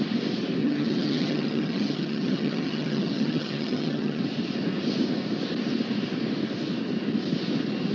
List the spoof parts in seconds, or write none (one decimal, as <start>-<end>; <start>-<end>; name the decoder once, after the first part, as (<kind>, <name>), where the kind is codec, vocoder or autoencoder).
0.6-4.2 (vocoder, HiFi-GAN)